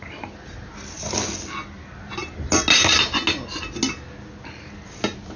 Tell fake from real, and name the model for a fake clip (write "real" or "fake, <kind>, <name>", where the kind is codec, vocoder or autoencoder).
real